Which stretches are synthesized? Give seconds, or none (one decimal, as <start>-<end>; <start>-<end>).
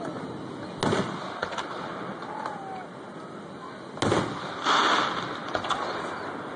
none